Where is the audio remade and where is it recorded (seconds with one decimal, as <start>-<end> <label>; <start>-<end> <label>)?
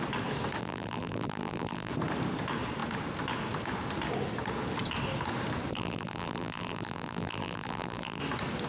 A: 0.0-0.6 recorded; 0.6-1.9 remade; 1.9-5.7 recorded; 5.7-8.2 remade; 8.2-8.7 recorded